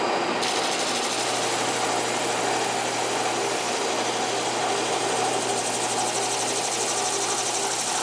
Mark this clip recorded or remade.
recorded